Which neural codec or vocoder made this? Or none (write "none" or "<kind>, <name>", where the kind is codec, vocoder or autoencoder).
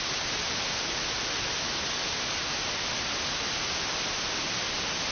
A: none